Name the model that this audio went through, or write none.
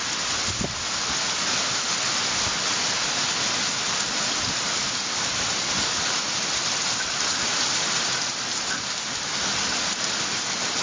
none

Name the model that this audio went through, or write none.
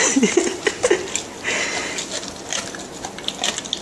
none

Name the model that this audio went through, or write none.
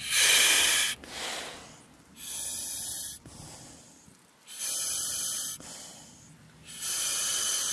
none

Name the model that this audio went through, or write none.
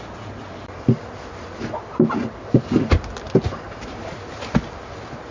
none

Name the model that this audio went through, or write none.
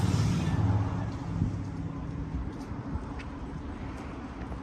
none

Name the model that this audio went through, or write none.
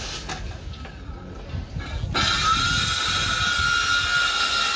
none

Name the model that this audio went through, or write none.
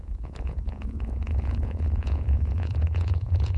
vocoder, Vocos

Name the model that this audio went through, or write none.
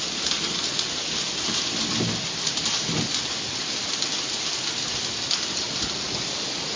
none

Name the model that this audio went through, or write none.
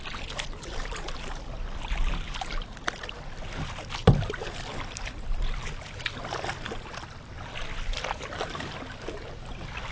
none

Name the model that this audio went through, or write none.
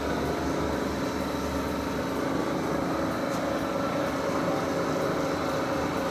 none